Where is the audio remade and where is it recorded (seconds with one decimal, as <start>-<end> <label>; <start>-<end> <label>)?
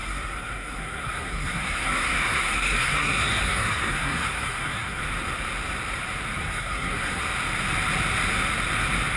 0.0-5.0 remade; 5.0-6.4 recorded; 6.4-7.2 remade; 7.2-9.2 recorded